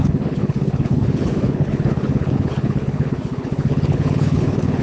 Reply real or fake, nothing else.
fake